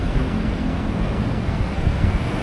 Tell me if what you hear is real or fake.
fake